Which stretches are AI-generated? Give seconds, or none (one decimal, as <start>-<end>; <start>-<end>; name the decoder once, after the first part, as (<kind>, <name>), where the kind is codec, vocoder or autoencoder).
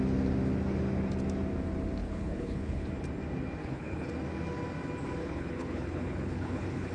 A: 2.0-2.9 (codec, HILCodec); 3.6-4.1; 5.2-6.9